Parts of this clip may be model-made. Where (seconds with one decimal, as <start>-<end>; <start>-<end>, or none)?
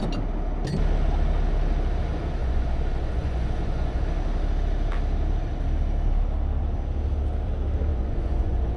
2.4-4.0; 7.9-8.8